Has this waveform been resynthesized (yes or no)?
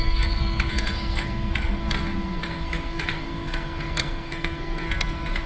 yes